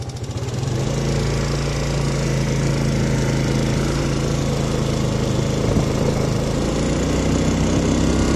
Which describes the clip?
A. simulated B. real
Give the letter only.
B